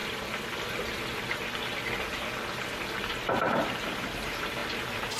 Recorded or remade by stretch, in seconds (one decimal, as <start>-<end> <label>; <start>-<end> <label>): 0.0-5.2 recorded